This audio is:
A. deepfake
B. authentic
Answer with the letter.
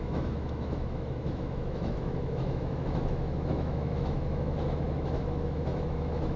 A